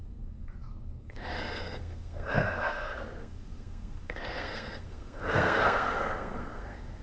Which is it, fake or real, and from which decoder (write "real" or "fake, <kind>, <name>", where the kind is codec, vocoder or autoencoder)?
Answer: fake, codec, SNAC